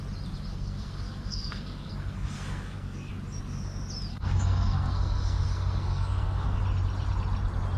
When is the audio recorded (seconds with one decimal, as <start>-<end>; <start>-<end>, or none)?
0.0-0.5; 3.1-4.1; 6.6-7.8